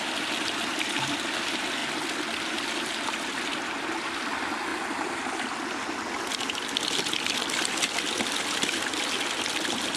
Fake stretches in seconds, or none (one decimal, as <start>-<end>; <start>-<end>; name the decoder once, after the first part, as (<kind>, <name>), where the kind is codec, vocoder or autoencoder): none